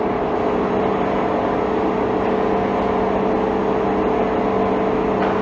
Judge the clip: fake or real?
real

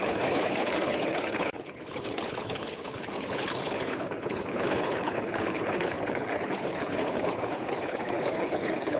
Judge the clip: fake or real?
fake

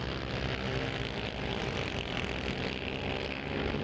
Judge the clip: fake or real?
real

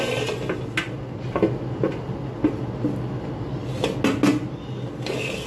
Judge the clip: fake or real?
real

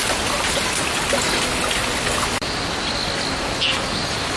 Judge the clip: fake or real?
real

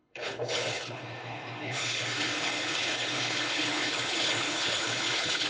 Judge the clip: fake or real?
fake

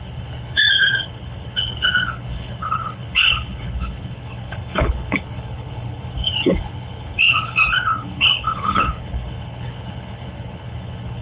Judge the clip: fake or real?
fake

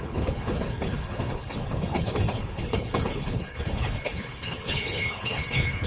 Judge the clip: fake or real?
fake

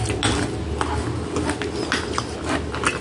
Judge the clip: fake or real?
real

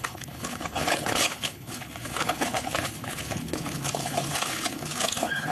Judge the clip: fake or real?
fake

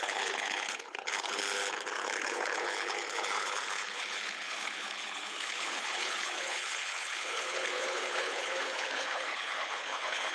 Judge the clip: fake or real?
fake